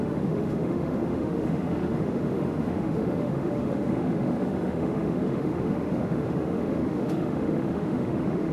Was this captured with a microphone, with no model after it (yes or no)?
no